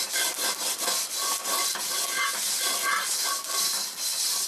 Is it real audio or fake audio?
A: real